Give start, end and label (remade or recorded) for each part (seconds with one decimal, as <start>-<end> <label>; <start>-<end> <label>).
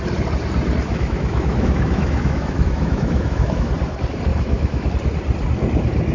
0.0-0.9 recorded; 0.9-3.7 remade; 3.7-4.3 recorded; 4.3-4.9 remade; 4.9-6.1 recorded